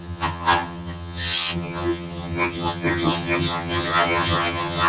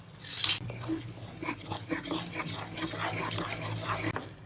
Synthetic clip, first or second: first